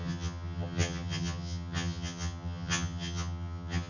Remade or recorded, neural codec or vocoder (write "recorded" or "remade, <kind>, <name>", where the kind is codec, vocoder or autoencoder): remade, vocoder, HiFi-GAN